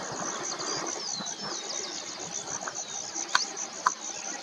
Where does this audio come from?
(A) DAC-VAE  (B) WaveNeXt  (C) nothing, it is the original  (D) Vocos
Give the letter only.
C